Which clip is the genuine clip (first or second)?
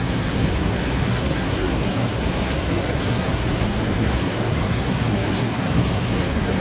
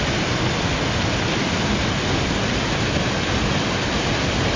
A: second